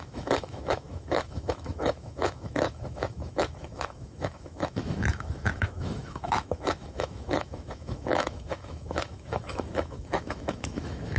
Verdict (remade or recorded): remade